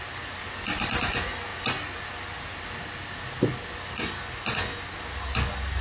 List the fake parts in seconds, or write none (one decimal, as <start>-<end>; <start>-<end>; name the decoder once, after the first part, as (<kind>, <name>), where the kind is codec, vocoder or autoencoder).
none